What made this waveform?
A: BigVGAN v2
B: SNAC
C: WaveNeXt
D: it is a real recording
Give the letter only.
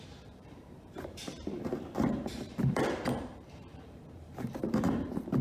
A